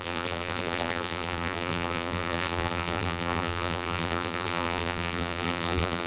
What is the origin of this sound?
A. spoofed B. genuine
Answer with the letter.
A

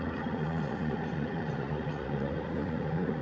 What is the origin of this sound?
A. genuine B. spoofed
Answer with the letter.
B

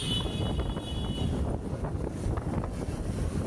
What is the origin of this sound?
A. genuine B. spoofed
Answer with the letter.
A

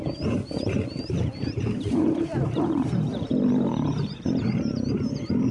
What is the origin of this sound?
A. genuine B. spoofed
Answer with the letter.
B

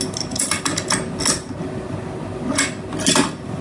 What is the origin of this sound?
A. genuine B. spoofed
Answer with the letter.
A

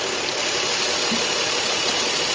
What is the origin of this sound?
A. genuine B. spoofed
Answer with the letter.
A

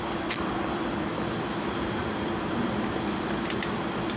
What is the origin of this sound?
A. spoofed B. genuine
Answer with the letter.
A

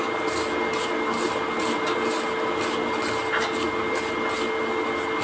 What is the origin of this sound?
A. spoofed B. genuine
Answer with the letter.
B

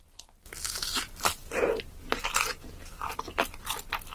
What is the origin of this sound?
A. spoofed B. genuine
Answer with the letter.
B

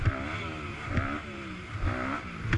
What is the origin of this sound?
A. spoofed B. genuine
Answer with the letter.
B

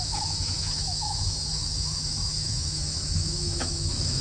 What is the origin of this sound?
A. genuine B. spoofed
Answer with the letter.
B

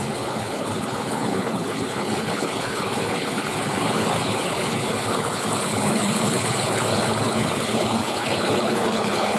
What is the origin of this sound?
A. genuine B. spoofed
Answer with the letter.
B